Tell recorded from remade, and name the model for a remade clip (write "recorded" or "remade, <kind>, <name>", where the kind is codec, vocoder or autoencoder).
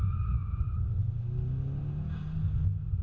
recorded